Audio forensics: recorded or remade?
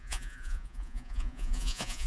remade